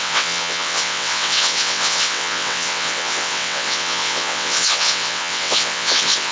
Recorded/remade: remade